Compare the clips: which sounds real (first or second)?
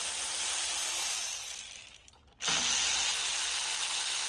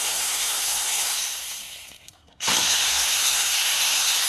first